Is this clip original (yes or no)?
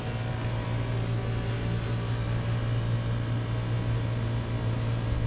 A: yes